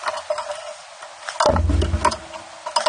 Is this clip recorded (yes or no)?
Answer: yes